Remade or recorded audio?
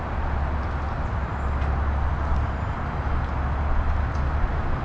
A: recorded